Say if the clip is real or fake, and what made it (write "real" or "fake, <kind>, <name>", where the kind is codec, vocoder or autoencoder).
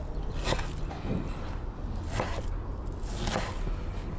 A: real